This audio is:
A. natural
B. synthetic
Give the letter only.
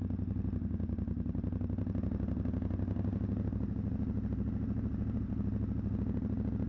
A